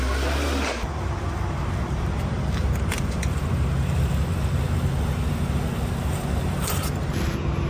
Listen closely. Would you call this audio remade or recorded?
recorded